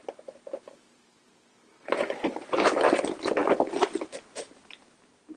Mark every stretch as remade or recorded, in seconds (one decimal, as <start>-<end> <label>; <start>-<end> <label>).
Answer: 0.0-2.7 remade; 2.7-5.4 recorded